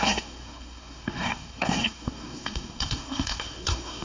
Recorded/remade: remade